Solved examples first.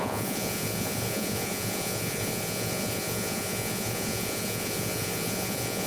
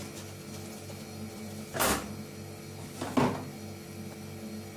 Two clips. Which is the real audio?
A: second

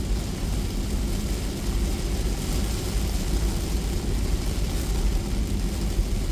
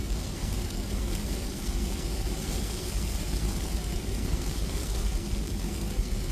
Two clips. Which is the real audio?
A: first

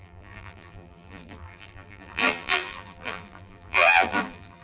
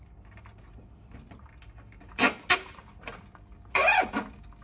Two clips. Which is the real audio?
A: second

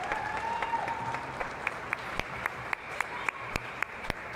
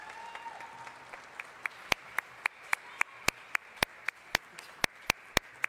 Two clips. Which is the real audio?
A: second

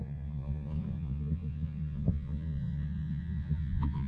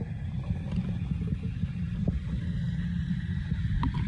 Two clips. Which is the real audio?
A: second